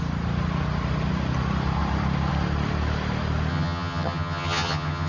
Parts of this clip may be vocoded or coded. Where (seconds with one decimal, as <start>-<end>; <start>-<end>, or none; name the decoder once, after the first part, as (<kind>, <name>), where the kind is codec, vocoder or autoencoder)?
3.5-5.1 (vocoder, HiFi-GAN)